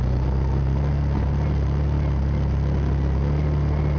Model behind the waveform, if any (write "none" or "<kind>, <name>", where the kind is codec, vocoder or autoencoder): none